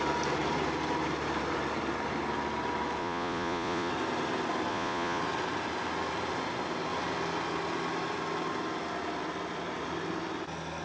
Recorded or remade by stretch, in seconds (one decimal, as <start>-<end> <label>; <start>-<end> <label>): 0.0-3.0 recorded; 3.0-3.9 remade; 3.9-4.7 recorded; 4.7-5.2 remade; 5.2-10.8 recorded